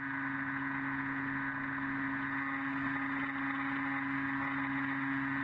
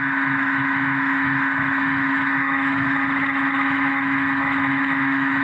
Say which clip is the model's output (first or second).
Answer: second